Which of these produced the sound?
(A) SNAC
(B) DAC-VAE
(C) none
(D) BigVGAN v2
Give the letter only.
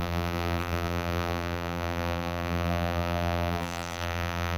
D